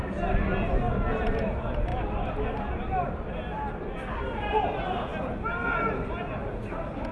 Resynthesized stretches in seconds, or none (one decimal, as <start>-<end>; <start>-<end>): none